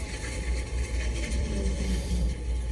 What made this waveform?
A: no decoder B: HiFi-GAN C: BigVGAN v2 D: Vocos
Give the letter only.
C